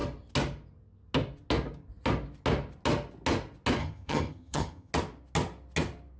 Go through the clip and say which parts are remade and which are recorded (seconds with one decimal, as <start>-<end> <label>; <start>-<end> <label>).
0.0-3.8 recorded; 3.8-4.9 remade; 4.9-6.2 recorded